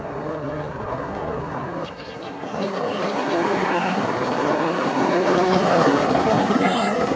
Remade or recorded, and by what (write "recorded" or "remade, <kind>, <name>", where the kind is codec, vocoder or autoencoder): remade, codec, SNAC